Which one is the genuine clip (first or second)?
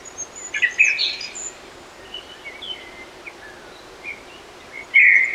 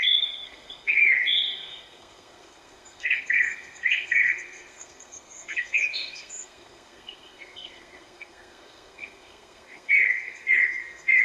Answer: first